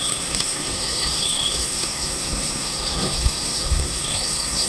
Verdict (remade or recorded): remade